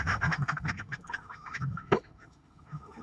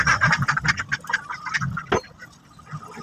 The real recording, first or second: second